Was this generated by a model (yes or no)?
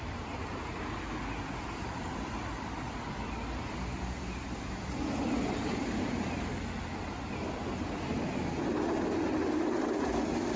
no